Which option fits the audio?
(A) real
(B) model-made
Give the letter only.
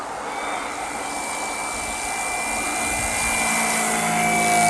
A